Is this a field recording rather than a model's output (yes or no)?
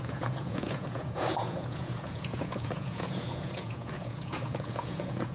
no